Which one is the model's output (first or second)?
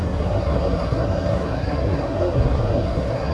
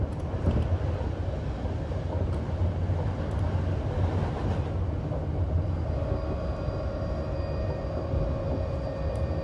first